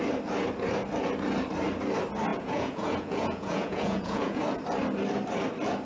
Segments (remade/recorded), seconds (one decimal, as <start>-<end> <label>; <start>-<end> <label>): 0.0-2.3 recorded; 2.3-4.4 remade; 4.4-5.8 recorded